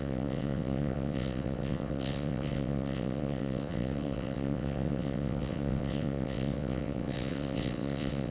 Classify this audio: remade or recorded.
remade